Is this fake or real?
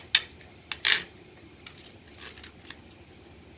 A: real